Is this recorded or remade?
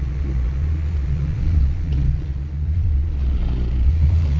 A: remade